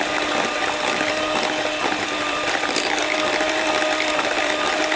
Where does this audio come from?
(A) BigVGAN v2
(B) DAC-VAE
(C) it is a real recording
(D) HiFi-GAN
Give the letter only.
A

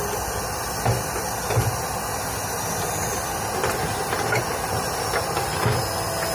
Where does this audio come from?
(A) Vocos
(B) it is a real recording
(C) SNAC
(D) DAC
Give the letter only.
B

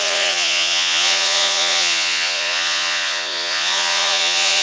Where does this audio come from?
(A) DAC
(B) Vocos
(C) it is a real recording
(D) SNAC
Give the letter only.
B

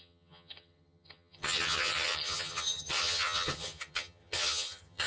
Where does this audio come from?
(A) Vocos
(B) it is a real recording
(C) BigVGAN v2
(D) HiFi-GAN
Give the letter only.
D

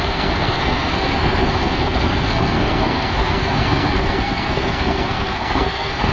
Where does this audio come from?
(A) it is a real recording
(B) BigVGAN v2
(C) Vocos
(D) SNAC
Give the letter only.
D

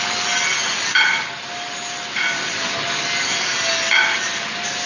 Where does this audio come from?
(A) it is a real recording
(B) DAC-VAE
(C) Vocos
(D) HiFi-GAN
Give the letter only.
A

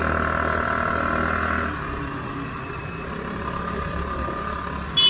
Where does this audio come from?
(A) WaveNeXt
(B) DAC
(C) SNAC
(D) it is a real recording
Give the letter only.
D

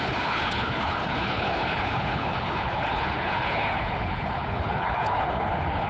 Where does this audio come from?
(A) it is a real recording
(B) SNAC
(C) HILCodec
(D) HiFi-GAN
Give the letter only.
C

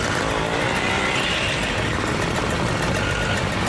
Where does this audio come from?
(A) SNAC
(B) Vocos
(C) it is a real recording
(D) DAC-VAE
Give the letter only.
C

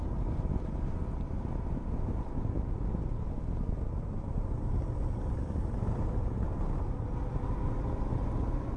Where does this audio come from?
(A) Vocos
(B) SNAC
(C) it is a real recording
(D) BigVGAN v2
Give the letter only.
C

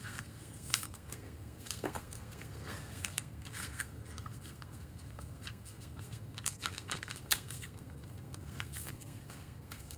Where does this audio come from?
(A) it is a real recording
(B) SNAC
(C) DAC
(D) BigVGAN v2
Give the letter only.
B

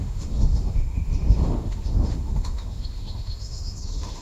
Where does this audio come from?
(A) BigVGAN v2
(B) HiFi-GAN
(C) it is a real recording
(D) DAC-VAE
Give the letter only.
D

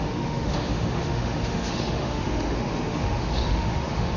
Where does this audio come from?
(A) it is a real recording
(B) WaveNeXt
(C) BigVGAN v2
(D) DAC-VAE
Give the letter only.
D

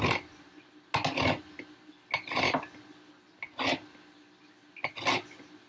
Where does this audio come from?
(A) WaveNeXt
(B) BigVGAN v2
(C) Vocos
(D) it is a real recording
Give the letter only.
D